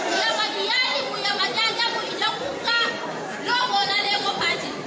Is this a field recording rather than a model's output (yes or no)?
no